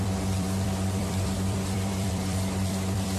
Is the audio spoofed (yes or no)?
yes